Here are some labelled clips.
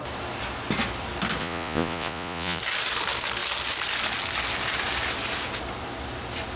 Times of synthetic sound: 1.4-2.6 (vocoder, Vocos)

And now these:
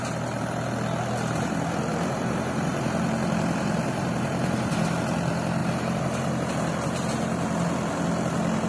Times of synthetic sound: 1.9-5.0 (vocoder, BigVGAN v2); 5.6-6.5

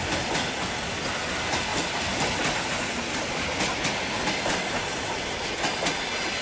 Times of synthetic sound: none